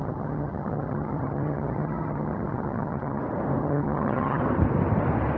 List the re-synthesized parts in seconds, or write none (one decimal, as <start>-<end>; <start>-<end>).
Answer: 0.0-3.2; 3.6-4.4

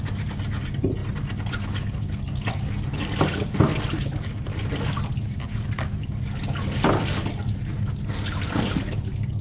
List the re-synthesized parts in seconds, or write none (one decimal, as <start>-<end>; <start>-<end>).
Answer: none

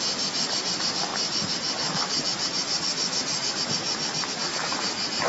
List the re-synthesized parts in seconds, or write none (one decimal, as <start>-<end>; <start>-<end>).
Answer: none